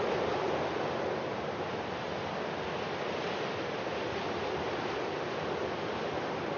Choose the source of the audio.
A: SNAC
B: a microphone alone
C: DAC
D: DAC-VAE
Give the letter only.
B